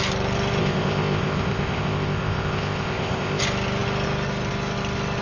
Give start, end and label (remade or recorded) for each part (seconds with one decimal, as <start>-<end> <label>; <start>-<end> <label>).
0.0-0.6 recorded; 0.6-3.4 remade; 3.4-5.2 recorded